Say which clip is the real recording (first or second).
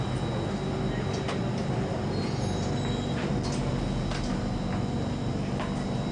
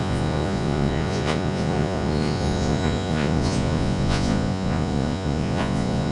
first